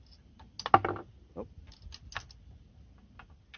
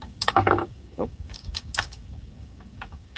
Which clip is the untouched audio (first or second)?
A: first